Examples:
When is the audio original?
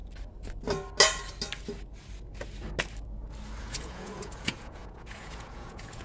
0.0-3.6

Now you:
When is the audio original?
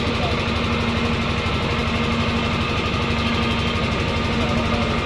0.0-5.1